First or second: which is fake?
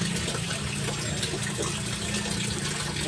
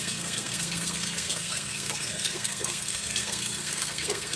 second